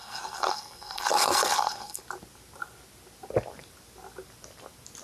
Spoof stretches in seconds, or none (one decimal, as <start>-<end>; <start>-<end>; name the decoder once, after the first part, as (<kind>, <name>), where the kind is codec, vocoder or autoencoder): 0.0-2.0 (codec, SNAC)